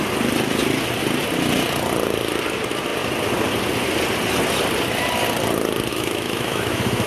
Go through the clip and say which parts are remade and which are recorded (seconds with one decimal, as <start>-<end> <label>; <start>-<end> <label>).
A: 0.0-5.9 recorded; 5.9-7.1 remade